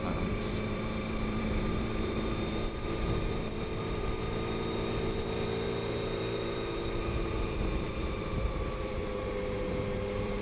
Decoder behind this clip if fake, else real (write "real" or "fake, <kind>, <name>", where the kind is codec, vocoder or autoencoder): fake, vocoder, BigVGAN v2